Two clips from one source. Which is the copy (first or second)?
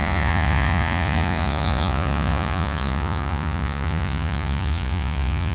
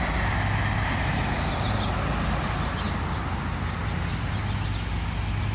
first